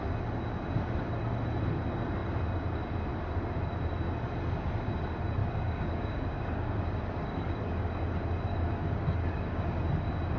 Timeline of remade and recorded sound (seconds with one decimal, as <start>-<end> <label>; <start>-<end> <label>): 0.0-5.4 recorded; 5.4-7.9 remade; 7.9-8.5 recorded; 8.5-9.8 remade; 9.8-10.4 recorded